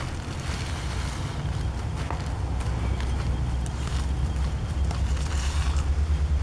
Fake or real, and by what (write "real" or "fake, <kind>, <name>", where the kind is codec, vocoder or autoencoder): real